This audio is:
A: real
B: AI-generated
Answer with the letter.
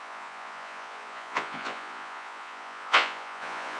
B